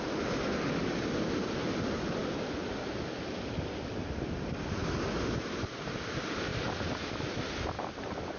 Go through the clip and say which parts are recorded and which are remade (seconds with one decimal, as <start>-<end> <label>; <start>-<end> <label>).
0.0-8.4 recorded